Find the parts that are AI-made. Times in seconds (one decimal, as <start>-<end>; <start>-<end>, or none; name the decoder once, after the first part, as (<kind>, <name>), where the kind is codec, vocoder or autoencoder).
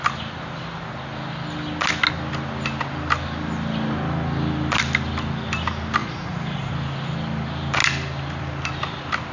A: 6.0-6.7 (vocoder, Vocos)